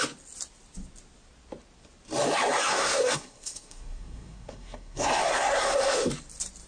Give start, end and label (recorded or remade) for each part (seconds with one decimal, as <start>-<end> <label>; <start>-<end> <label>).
0.0-2.7 recorded; 2.7-6.1 remade; 6.1-6.7 recorded